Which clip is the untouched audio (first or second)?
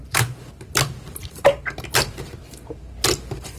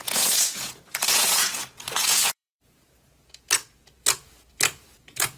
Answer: first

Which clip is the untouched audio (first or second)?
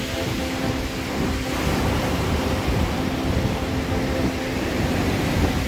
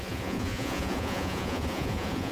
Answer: first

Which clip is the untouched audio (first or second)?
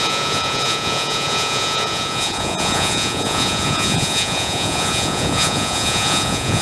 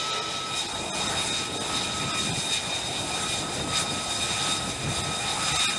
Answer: second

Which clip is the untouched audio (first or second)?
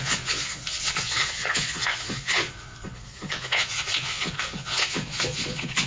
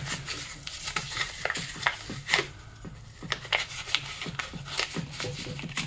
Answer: second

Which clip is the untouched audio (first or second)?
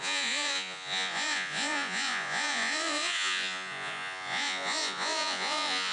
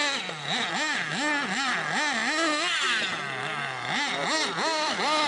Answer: second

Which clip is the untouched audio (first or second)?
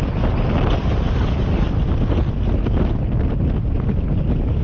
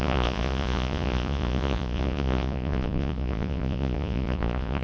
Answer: first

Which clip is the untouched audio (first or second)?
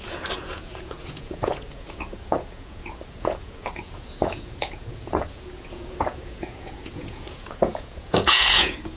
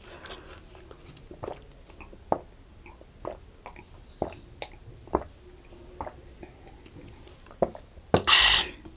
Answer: second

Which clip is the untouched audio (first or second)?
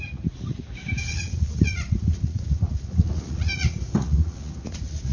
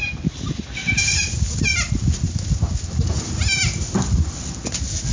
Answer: second